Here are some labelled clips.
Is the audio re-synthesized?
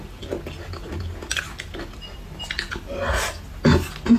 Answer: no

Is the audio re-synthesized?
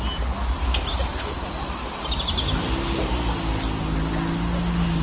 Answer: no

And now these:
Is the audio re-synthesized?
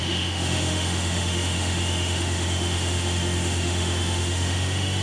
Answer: yes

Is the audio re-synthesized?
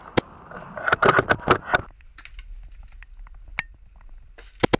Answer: no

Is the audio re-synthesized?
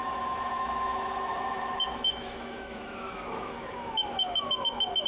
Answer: yes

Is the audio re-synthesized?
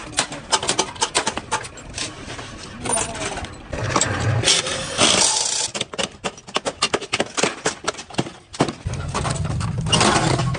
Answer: no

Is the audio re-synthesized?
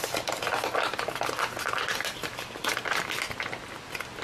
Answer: no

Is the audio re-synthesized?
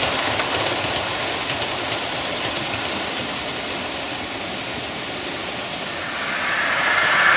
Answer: no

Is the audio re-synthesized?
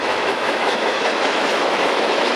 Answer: yes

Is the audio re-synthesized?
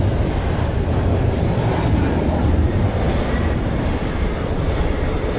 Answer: no